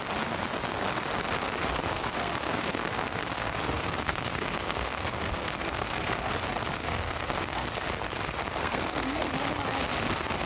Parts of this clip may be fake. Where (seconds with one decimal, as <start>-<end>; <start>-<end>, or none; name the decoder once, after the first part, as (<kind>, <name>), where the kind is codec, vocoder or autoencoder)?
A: 1.9-6.3 (codec, SNAC); 6.8-7.7; 8.6-9.3